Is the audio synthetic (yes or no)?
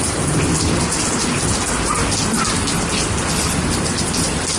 no